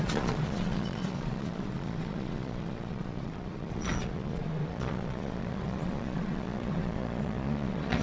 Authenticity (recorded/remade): remade